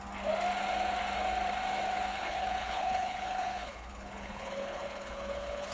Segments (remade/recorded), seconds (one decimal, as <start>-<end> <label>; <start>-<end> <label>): 0.0-2.1 recorded; 2.1-5.7 remade

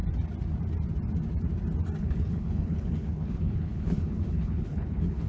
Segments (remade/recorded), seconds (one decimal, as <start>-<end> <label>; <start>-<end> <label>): 0.0-2.0 recorded; 2.0-5.3 remade

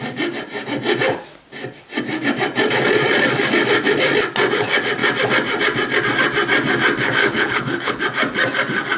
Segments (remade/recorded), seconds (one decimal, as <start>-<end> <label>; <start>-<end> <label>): 0.0-7.2 recorded; 7.2-8.0 remade; 8.0-9.0 recorded